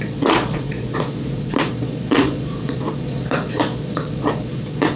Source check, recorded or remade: remade